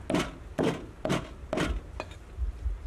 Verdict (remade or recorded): recorded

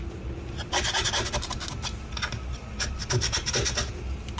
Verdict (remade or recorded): recorded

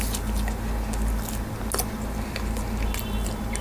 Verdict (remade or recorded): recorded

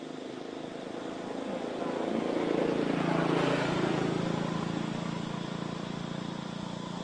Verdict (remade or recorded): recorded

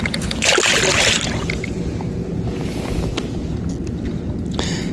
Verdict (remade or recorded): recorded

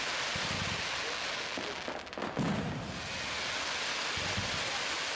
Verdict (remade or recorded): recorded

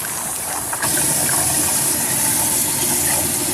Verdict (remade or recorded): recorded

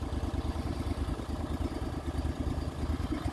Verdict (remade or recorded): recorded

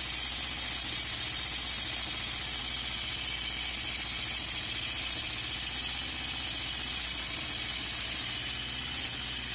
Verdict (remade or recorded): recorded